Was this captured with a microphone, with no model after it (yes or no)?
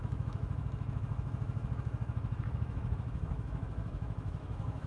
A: no